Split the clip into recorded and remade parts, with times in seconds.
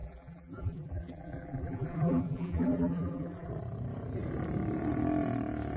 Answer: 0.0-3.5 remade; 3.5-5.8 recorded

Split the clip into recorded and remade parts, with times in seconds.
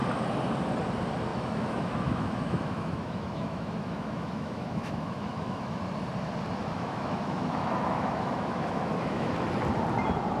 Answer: 0.0-1.3 recorded; 1.3-5.8 remade; 5.8-6.6 recorded; 6.6-9.3 remade; 9.3-10.4 recorded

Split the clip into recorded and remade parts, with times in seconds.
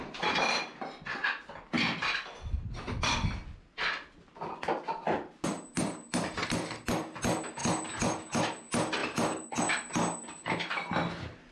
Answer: 0.0-11.5 recorded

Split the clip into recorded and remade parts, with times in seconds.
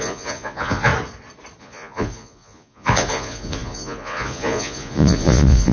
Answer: 0.0-0.9 remade; 0.9-1.6 recorded; 1.6-5.7 remade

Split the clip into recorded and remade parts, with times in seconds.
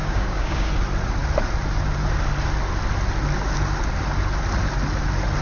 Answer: 0.0-0.7 remade; 0.7-5.4 recorded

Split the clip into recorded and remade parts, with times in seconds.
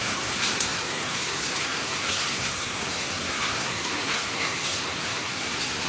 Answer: 0.0-5.9 remade